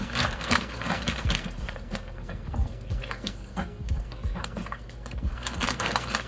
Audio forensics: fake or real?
fake